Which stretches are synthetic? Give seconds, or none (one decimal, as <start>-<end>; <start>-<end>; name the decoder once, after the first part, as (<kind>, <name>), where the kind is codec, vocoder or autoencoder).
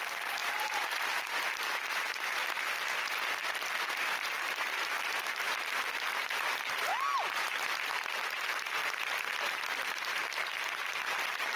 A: 0.0-2.4 (vocoder, BigVGAN v2); 3.3-6.9; 8.1-8.8; 9.6-11.6